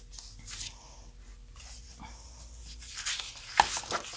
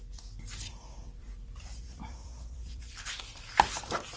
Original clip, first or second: first